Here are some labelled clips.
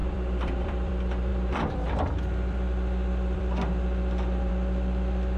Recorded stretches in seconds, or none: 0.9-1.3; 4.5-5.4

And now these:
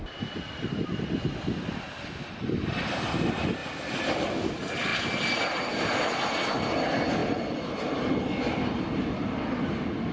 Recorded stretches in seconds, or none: 0.0-10.1

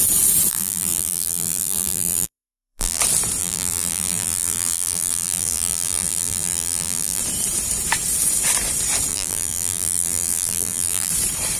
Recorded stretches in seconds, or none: 0.0-0.5; 3.0-3.4; 7.2-9.1; 11.1-11.6

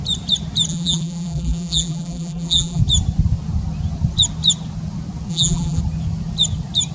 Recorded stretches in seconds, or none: 0.0-0.7; 2.8-5.3; 5.8-6.9

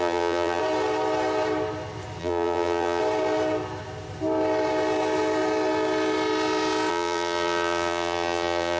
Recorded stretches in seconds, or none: 0.6-2.2; 3.0-6.9